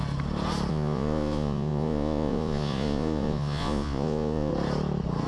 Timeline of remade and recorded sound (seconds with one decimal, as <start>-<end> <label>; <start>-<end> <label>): 0.0-0.7 recorded; 0.7-4.5 remade; 4.5-5.3 recorded